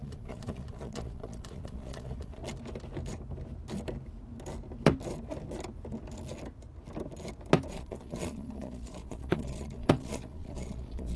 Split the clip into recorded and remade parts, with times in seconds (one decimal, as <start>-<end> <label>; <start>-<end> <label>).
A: 0.0-2.4 remade; 2.4-7.7 recorded; 7.7-11.2 remade